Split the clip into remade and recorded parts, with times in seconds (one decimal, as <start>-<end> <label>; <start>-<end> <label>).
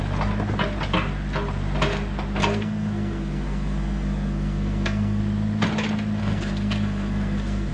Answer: 0.0-2.4 recorded; 2.4-5.2 remade; 5.2-6.2 recorded; 6.2-7.7 remade